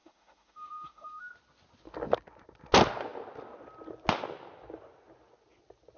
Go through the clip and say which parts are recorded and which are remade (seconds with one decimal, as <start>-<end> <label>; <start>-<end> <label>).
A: 0.0-1.3 remade; 1.3-6.0 recorded